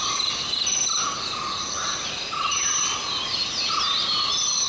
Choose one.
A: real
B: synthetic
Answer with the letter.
A